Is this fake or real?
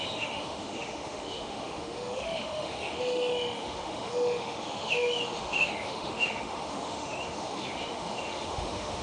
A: fake